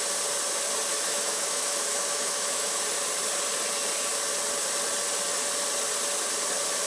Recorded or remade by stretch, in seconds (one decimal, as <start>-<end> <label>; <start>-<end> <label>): 0.0-0.9 recorded; 0.9-2.8 remade; 2.8-6.9 recorded